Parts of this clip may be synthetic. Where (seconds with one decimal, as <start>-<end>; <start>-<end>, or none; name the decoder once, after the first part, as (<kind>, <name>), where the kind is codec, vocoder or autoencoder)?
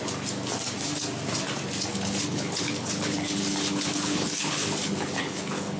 1.9-5.8 (codec, HILCodec)